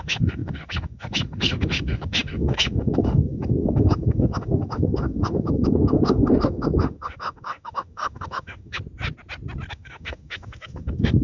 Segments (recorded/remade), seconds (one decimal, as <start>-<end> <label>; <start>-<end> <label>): 0.0-8.8 remade; 8.8-9.7 recorded; 9.7-11.2 remade